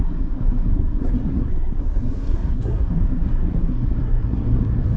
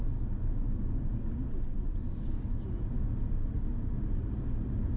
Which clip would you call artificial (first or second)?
first